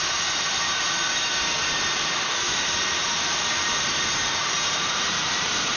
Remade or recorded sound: remade